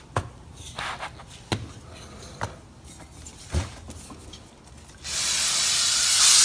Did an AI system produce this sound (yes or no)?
no